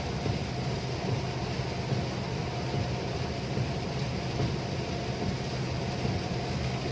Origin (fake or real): real